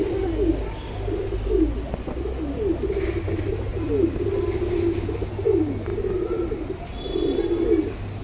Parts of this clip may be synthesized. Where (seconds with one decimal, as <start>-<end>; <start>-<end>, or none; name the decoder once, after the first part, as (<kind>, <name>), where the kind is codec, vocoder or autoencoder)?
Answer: 3.7-4.8 (vocoder, BigVGAN v2)